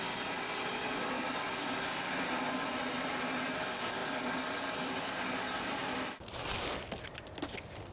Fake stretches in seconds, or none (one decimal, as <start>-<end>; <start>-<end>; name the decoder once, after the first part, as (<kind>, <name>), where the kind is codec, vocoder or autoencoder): none